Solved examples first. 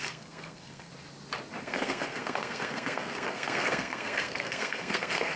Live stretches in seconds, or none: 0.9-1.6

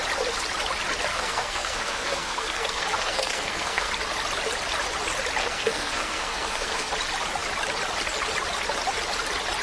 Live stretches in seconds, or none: 0.0-1.1; 3.9-5.4; 6.9-9.6

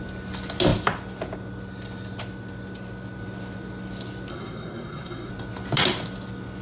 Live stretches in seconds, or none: 0.0-4.3; 5.3-6.6

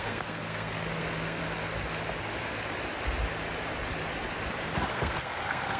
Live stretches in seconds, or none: 1.4-4.9

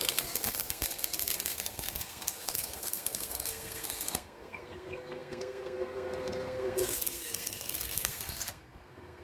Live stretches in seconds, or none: none

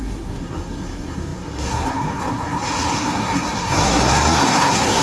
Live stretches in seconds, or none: none